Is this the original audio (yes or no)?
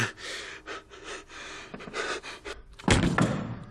yes